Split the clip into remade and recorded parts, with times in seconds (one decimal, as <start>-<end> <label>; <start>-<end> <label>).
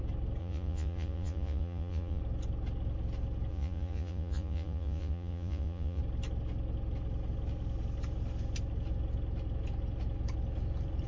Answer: 0.0-0.4 recorded; 0.4-2.2 remade; 2.2-3.5 recorded; 3.5-6.0 remade; 6.0-11.1 recorded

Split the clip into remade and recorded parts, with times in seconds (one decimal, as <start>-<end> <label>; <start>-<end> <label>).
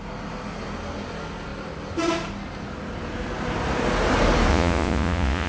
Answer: 0.0-4.5 recorded; 4.5-5.5 remade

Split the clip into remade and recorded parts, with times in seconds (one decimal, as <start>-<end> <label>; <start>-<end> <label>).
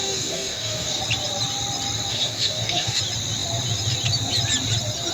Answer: 0.0-1.0 remade; 1.0-2.1 recorded; 2.1-3.0 remade; 3.0-5.1 recorded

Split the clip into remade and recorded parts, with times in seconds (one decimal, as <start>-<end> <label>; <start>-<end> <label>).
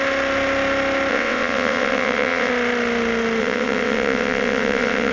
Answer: 0.0-1.1 recorded; 1.1-2.5 remade; 2.5-3.4 recorded; 3.4-5.1 remade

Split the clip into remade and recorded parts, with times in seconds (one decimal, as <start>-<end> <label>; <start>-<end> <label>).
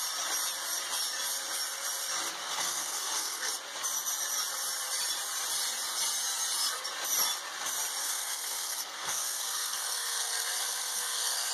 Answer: 0.0-2.4 recorded; 2.4-3.5 remade; 3.5-8.0 recorded; 8.0-11.5 remade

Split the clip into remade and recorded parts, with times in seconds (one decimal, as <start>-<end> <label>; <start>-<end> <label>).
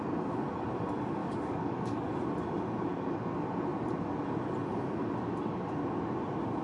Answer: 0.0-1.2 recorded; 1.2-2.1 remade; 2.1-6.6 recorded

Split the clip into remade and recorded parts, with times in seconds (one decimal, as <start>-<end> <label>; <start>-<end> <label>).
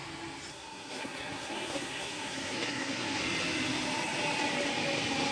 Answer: 0.0-0.5 recorded; 0.5-3.2 remade; 3.2-5.3 recorded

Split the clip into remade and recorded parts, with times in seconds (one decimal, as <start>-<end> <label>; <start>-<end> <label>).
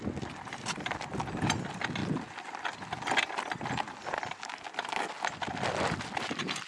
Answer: 0.0-6.7 recorded